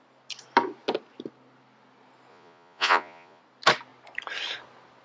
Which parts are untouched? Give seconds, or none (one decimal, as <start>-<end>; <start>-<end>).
0.0-2.3; 3.4-5.0